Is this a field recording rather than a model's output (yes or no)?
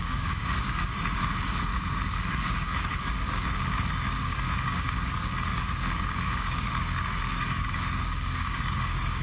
no